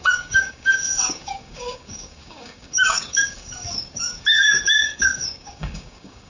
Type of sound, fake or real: fake